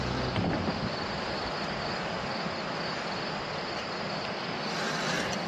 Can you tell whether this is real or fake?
real